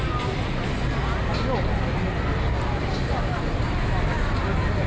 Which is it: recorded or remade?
recorded